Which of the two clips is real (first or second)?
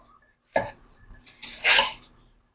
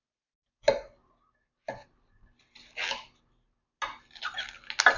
second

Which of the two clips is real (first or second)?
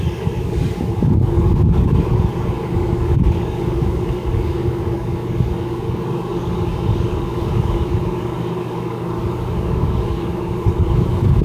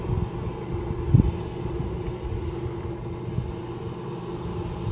second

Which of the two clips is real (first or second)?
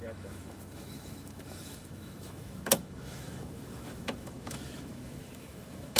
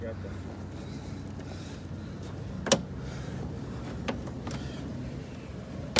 second